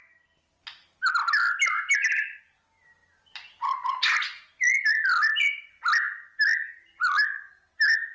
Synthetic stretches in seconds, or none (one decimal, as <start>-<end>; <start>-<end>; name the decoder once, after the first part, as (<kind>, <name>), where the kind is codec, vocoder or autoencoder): none